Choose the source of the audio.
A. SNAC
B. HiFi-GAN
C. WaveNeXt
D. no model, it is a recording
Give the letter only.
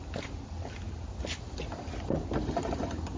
D